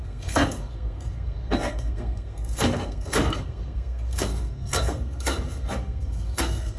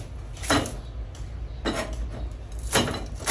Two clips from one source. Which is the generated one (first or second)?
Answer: first